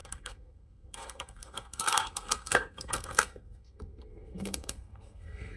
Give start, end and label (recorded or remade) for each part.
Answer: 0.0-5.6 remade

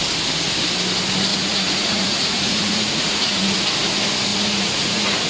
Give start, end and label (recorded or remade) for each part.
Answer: 0.0-1.3 recorded; 1.3-3.6 remade; 3.6-4.3 recorded; 4.3-5.3 remade

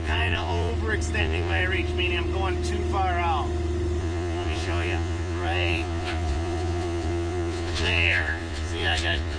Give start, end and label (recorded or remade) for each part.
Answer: 0.0-0.7 remade; 0.7-1.2 recorded; 1.2-1.6 remade; 1.6-4.0 recorded; 4.0-9.4 remade

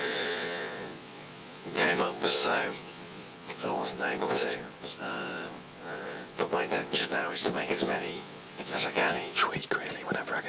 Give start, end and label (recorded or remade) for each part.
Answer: 0.0-9.4 remade; 9.4-10.5 recorded

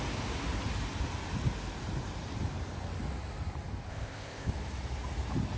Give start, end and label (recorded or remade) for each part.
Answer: 0.0-3.9 recorded; 3.9-4.5 remade; 4.5-5.6 recorded

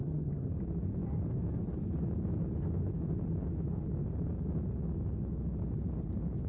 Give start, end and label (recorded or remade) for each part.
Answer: 0.0-0.5 remade; 0.5-6.5 recorded

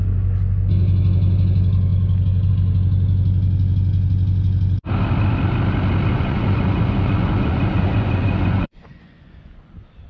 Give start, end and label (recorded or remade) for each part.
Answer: 0.0-6.1 recorded; 6.1-9.7 remade; 9.7-10.1 recorded

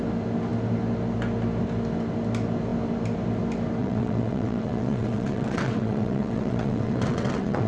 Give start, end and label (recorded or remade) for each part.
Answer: 0.0-3.8 recorded; 3.8-7.7 remade